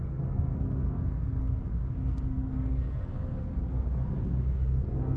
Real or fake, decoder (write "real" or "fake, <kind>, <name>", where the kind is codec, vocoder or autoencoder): fake, codec, SNAC